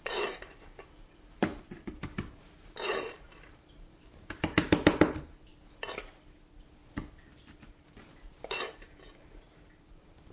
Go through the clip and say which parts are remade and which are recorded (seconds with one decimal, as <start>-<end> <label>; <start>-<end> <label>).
0.0-5.5 remade; 5.5-7.7 recorded; 7.7-10.3 remade